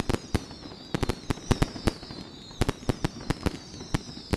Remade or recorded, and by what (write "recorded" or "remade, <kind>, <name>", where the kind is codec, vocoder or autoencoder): recorded